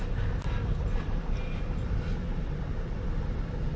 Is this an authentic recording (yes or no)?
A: yes